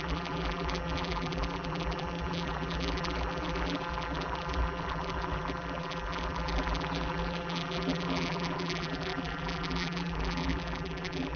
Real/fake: fake